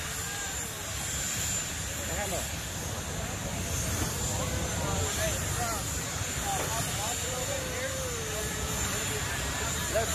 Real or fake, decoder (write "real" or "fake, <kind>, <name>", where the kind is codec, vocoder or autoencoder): real